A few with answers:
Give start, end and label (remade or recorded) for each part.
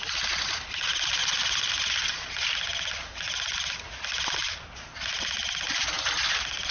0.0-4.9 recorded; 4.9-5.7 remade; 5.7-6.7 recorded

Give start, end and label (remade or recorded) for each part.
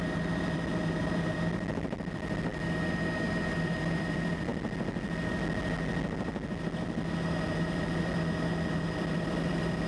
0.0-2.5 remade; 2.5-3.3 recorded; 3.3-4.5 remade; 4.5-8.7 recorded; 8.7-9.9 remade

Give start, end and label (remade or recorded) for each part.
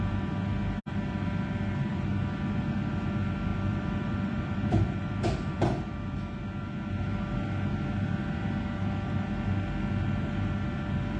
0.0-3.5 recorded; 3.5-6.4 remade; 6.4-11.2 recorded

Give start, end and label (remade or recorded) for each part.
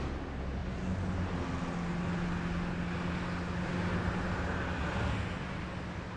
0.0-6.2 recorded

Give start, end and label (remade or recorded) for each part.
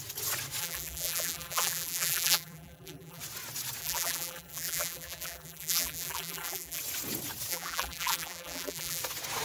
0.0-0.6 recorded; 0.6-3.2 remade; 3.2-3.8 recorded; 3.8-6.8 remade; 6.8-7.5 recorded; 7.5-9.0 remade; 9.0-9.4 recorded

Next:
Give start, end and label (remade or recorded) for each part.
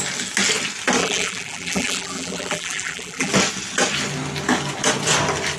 0.0-1.0 recorded; 1.0-3.3 remade; 3.3-5.6 recorded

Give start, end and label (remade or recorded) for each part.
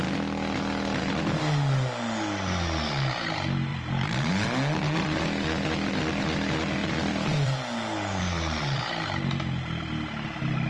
0.0-3.7 recorded; 3.7-4.3 remade; 4.3-6.8 recorded; 6.8-8.8 remade; 8.8-10.7 recorded